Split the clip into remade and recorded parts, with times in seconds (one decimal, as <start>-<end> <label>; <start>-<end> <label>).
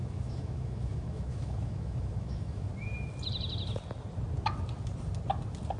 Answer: 0.0-2.7 remade; 2.7-5.8 recorded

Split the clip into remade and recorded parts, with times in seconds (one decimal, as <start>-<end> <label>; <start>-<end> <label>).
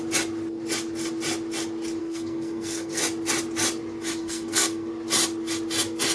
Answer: 0.0-2.0 recorded; 2.0-3.0 remade; 3.0-4.2 recorded; 4.2-4.9 remade; 4.9-6.1 recorded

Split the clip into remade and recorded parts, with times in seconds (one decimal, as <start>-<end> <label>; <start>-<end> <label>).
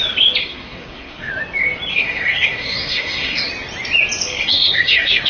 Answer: 0.0-0.4 recorded; 0.4-1.3 remade; 1.3-1.9 recorded; 1.9-3.5 remade; 3.5-4.4 recorded; 4.4-5.3 remade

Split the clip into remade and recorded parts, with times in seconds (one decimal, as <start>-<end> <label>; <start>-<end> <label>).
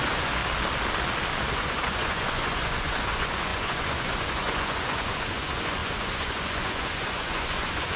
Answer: 0.0-0.4 remade; 0.4-1.5 recorded; 1.5-8.0 remade